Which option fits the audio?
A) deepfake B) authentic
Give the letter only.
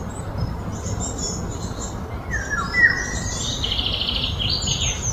B